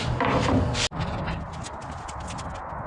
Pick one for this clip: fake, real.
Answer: real